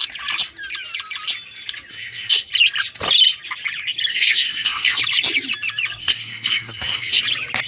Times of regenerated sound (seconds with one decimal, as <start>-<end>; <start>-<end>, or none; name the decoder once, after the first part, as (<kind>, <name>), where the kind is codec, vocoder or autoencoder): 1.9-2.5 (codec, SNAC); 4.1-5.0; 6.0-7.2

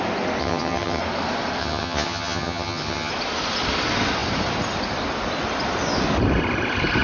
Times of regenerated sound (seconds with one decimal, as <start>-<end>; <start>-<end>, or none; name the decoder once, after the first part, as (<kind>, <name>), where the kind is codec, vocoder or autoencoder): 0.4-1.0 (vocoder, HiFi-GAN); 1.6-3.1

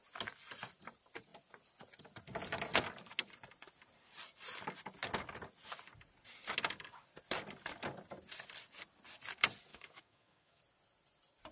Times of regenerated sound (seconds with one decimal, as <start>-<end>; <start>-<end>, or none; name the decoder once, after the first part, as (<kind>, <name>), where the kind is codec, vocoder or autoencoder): 9.7-10.6 (autoencoder, DAC-VAE)